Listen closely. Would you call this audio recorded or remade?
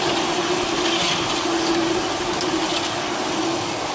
recorded